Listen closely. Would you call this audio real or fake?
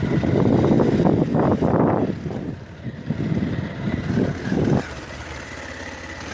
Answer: real